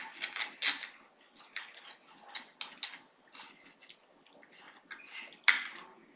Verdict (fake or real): real